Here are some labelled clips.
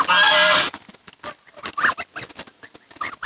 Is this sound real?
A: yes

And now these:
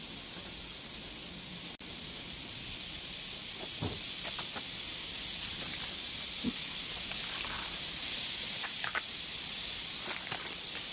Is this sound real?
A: yes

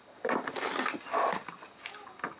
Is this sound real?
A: yes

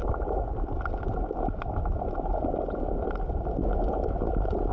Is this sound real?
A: yes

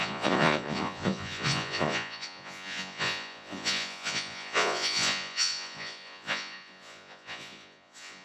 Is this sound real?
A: no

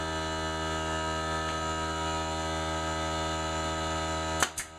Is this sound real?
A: yes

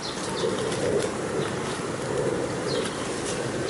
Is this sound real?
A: yes